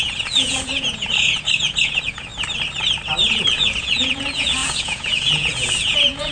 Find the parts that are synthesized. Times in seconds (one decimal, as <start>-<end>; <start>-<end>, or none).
0.0-2.3; 3.3-6.3